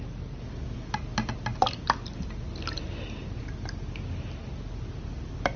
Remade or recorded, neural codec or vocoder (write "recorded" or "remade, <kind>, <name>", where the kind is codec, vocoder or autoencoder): recorded